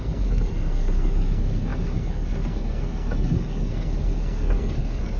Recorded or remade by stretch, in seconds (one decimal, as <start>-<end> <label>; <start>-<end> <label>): 0.0-5.2 remade